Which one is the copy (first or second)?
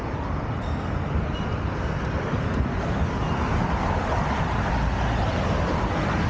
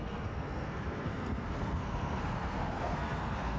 second